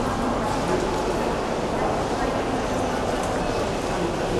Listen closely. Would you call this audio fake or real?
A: real